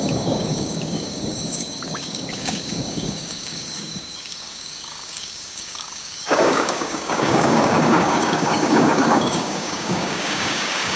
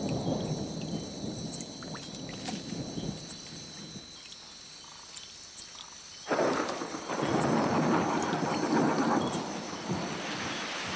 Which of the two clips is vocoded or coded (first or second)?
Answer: first